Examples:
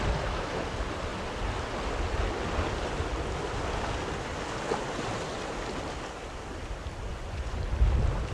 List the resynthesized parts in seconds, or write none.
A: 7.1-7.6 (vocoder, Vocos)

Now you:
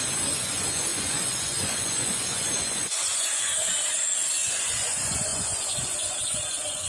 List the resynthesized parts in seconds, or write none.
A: 0.0-6.9 (vocoder, Vocos)